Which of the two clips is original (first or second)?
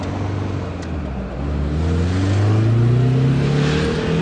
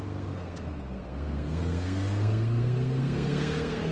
first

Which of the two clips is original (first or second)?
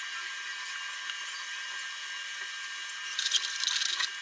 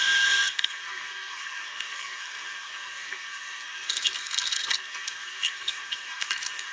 first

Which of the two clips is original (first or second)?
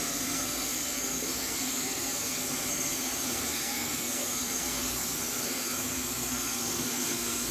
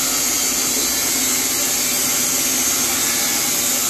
second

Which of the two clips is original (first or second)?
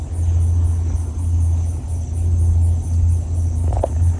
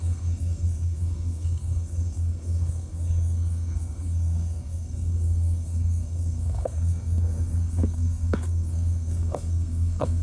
first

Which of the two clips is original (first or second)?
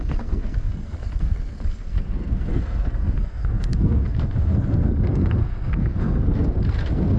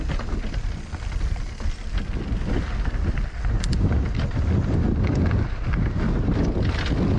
second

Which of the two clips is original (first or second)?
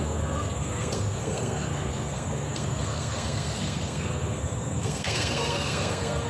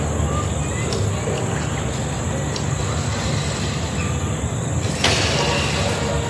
second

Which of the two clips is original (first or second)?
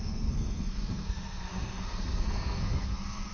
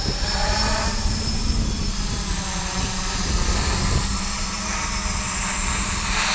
second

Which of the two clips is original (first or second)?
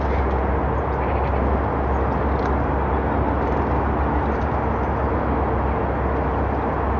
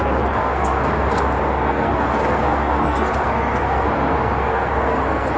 first